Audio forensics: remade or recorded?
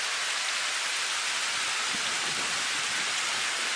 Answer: recorded